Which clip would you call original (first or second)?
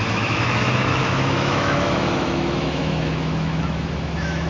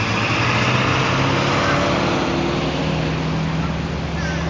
second